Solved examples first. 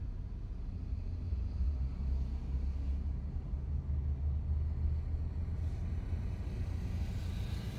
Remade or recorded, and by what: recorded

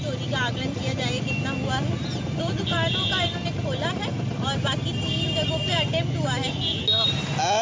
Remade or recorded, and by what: recorded